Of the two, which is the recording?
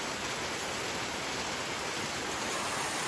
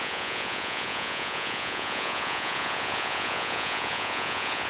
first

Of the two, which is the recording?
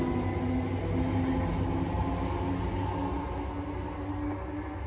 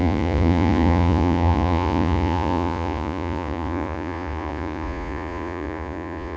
first